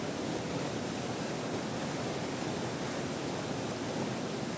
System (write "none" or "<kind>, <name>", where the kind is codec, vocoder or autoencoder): none